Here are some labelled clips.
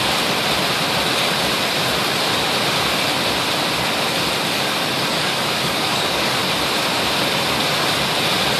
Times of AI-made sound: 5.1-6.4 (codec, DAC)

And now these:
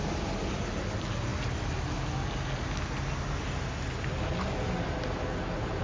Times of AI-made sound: none

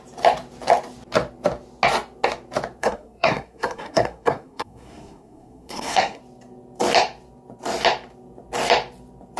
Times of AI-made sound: 2.8-6.2 (codec, SNAC)

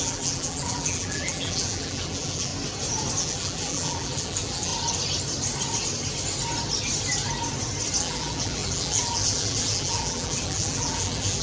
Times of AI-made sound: 0.0-2.5 (vocoder, BigVGAN v2); 3.2-4.7; 8.0-11.4

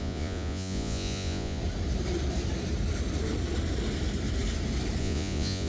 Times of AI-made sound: 0.0-1.6 (vocoder, Vocos); 5.0-5.7

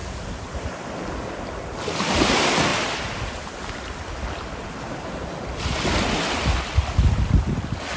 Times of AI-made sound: none

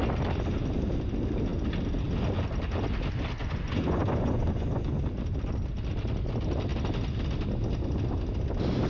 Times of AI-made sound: 3.4-4.9 (vocoder, Vocos)